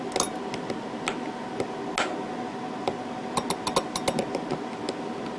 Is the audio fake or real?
real